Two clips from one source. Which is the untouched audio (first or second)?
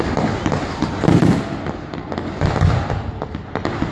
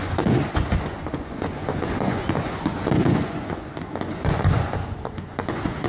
first